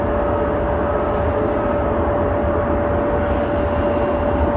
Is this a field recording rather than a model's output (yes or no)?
yes